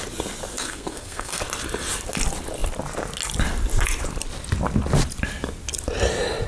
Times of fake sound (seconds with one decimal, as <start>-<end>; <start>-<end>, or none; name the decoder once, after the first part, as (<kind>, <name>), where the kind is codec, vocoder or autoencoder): 0.5-1.4 (codec, SNAC)

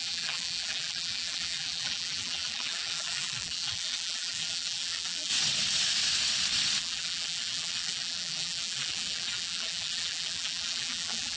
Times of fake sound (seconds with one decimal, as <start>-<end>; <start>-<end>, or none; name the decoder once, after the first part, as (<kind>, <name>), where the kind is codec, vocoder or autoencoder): 0.0-5.3 (vocoder, BigVGAN v2); 6.8-11.4

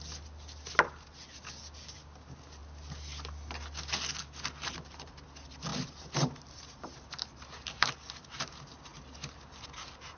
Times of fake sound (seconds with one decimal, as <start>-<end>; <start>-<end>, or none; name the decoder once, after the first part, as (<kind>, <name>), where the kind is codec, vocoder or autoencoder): 5.7-7.9 (vocoder, BigVGAN v2)

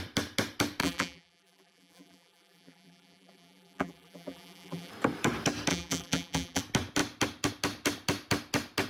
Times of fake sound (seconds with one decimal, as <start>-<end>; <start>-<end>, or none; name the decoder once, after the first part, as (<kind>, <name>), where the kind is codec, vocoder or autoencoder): 0.8-4.9 (vocoder, BigVGAN v2); 5.7-6.6

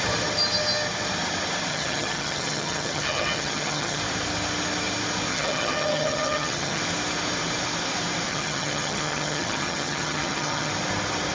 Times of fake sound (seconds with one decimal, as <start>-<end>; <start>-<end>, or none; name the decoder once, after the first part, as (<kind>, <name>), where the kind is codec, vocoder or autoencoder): 1.7-4.0 (vocoder, HiFi-GAN); 5.3-6.8; 8.3-10.7